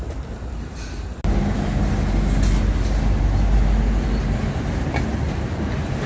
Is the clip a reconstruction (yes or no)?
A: no